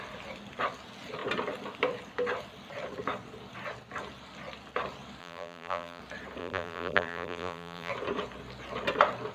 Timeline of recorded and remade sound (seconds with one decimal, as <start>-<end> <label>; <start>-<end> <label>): 0.0-5.2 recorded; 5.2-6.0 remade; 6.0-6.4 recorded; 6.4-7.9 remade; 7.9-9.3 recorded